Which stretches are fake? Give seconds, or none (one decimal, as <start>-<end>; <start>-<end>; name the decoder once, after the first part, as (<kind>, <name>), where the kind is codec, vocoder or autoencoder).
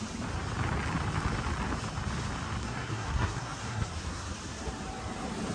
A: 2.6-4.3 (codec, SNAC)